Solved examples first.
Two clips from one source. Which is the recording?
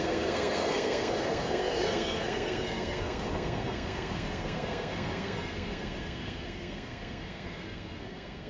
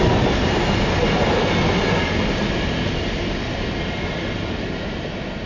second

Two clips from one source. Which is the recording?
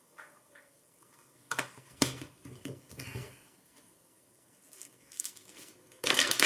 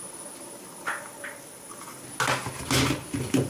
second